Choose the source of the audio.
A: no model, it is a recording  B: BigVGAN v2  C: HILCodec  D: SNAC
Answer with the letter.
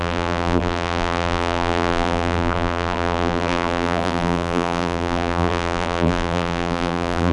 B